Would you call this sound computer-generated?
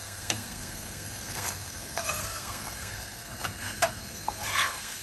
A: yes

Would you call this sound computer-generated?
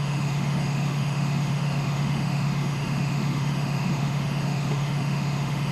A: yes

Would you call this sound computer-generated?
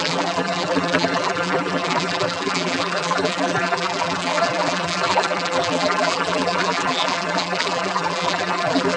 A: yes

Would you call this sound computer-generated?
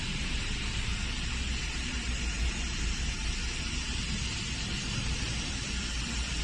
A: yes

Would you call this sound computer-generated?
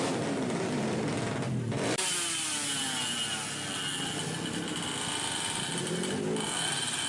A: no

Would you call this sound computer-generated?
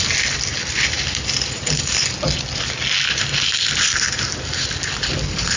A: no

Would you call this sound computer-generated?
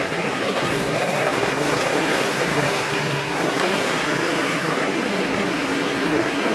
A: yes